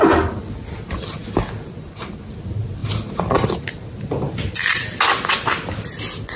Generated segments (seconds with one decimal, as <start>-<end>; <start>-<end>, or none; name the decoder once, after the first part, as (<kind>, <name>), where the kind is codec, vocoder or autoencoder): none